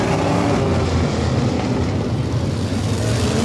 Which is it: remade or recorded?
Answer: recorded